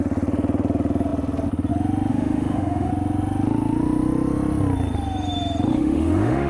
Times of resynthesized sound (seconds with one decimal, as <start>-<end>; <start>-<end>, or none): 2.1-2.9; 5.7-6.5